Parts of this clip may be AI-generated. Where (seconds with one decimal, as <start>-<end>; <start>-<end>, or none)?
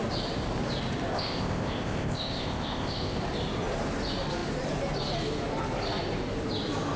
1.1-3.2